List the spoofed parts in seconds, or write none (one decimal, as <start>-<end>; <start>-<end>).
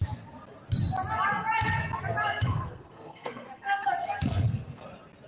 2.2-4.8